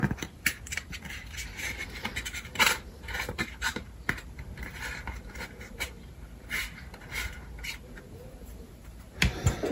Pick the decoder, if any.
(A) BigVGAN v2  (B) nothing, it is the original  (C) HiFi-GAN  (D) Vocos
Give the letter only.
A